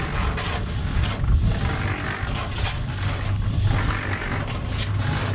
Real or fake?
real